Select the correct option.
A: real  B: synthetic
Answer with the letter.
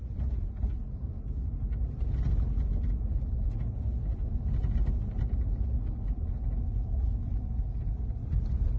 A